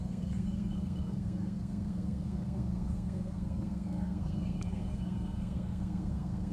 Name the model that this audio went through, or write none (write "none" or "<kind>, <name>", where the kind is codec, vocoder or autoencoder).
codec, SNAC